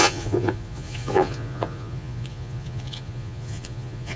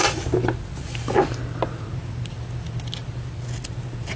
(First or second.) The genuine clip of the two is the second